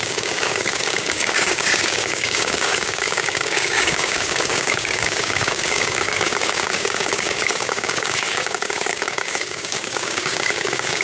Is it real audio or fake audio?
fake